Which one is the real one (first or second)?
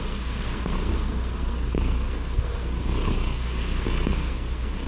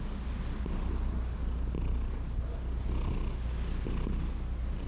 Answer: second